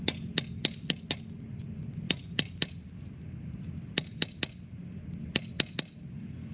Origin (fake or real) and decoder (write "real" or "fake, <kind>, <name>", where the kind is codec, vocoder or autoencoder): real